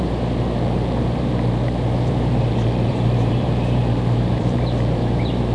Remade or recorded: remade